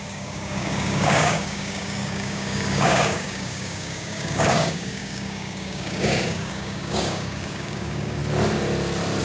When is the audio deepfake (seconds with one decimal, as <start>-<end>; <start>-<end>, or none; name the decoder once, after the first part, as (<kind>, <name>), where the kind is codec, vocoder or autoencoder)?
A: 0.0-8.2 (codec, DAC)